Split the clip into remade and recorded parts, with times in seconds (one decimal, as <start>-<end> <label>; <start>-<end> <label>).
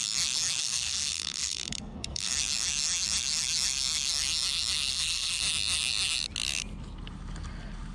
0.0-0.6 recorded; 0.6-2.3 remade; 2.3-4.9 recorded; 4.9-5.4 remade; 5.4-7.9 recorded